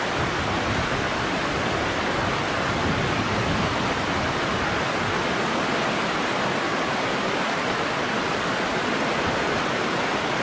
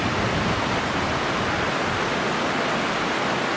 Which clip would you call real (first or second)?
second